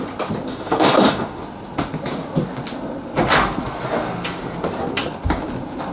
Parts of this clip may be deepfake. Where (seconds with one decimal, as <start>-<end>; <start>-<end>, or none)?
0.5-1.4